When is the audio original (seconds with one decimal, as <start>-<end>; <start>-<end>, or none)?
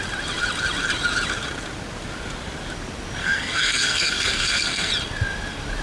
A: 0.0-3.2; 4.9-5.8